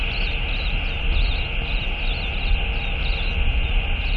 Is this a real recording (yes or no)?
yes